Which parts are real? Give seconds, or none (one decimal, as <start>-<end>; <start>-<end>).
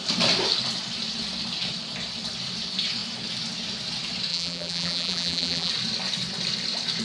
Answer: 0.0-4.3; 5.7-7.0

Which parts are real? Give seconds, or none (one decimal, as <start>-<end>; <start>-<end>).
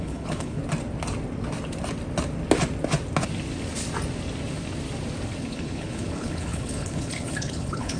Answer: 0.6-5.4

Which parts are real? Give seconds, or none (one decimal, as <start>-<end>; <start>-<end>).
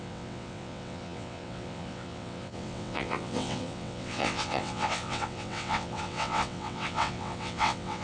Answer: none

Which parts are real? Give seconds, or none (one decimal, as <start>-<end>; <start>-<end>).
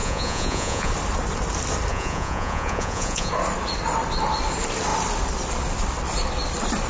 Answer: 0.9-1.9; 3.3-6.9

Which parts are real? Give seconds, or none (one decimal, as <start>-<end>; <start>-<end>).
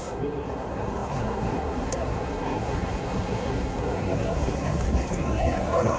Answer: none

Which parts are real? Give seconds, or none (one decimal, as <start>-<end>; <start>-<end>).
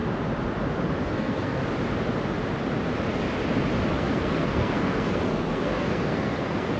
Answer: 0.0-1.0; 1.6-3.9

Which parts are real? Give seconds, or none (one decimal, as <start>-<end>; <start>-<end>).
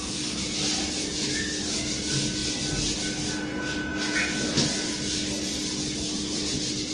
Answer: 0.0-6.9